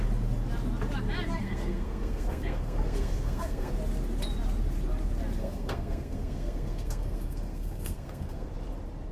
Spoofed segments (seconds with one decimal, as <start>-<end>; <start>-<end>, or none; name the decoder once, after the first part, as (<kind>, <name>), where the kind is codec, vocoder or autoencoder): 1.4-3.7 (codec, SNAC); 5.4-8.5